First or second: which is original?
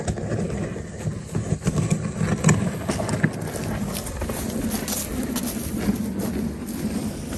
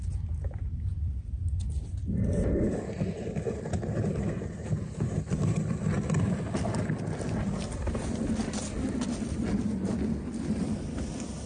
first